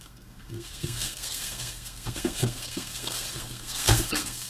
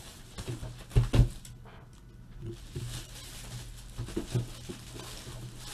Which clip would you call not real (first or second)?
first